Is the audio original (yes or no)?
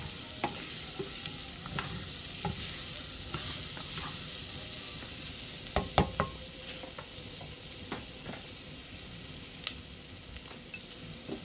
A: yes